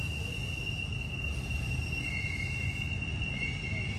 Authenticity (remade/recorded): recorded